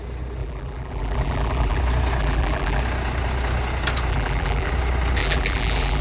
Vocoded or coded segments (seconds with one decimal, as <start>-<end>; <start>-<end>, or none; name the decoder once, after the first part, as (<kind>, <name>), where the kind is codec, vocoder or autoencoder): 0.4-1.8 (vocoder, BigVGAN v2); 2.2-2.8; 4.1-4.7; 5.2-6.0